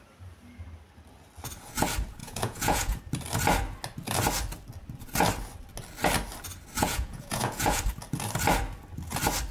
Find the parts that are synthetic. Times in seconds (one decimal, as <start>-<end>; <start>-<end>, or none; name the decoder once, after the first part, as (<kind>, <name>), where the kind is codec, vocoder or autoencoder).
2.2-3.0 (vocoder, Vocos); 6.8-7.8